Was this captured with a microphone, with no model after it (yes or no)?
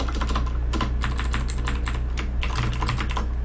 yes